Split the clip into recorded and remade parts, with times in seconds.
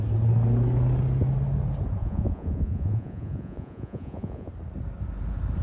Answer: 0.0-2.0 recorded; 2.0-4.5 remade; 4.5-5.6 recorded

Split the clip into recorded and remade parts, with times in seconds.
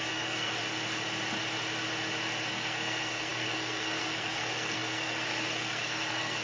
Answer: 0.0-0.6 remade; 0.6-2.5 recorded; 2.5-6.4 remade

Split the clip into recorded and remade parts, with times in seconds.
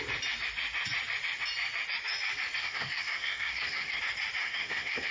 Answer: 0.0-2.6 recorded; 2.6-4.0 remade; 4.0-4.4 recorded; 4.4-5.1 remade